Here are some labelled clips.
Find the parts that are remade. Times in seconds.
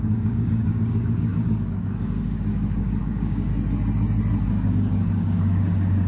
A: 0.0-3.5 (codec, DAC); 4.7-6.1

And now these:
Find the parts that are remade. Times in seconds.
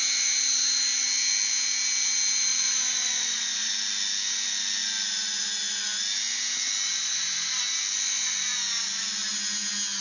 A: 2.5-3.7 (vocoder, Vocos)